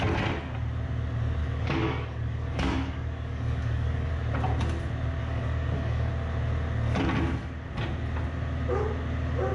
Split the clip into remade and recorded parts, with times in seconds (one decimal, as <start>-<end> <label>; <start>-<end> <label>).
0.0-1.4 recorded; 1.4-4.1 remade; 4.1-5.2 recorded; 5.2-6.1 remade; 6.1-9.5 recorded